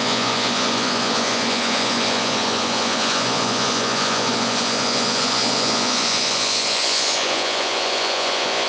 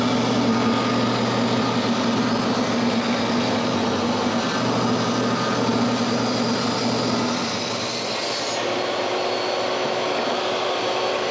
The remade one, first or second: first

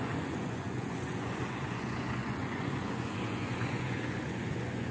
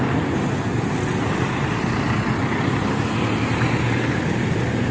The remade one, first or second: first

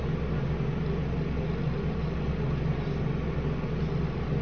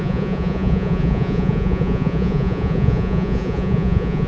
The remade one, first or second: second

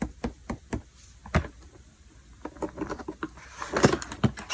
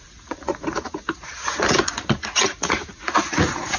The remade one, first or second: second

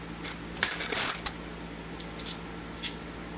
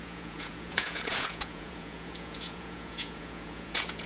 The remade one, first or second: second